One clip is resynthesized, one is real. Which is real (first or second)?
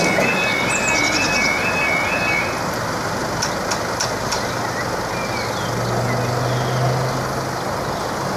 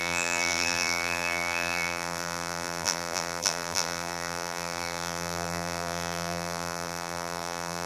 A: first